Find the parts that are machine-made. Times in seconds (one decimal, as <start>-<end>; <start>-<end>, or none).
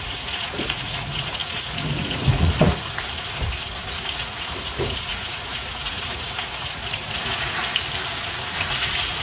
0.0-7.6; 8.4-9.2